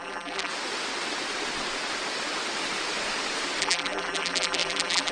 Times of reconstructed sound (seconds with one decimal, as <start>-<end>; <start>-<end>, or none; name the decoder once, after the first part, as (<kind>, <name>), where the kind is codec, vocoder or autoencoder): 0.0-0.5 (vocoder, BigVGAN v2); 3.6-5.1